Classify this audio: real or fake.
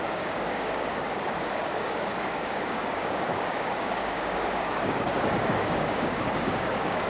fake